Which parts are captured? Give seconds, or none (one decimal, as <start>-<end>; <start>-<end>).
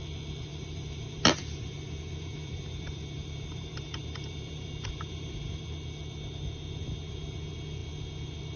0.0-0.5; 5.6-8.6